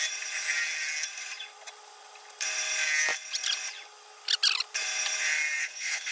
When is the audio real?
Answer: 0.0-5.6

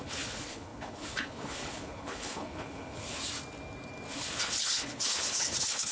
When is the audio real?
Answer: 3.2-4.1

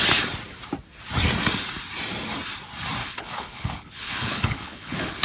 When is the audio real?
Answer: 0.0-3.0

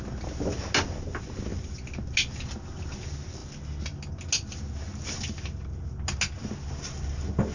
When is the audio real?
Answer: 0.0-7.5

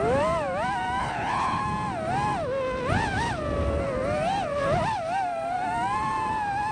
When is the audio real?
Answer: 0.0-1.0; 1.6-6.7

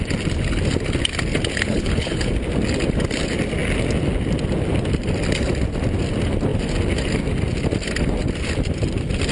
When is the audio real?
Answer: 0.0-1.5; 2.3-9.3

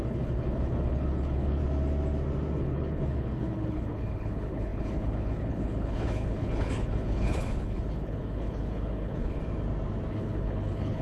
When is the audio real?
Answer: 1.6-2.6; 9.4-10.1

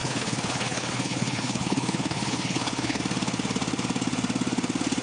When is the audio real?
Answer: 3.0-5.0